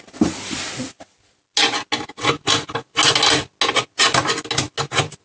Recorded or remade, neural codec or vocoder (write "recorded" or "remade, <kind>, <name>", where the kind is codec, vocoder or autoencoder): recorded